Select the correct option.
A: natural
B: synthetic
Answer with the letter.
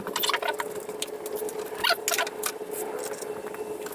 A